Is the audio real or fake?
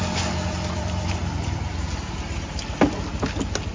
real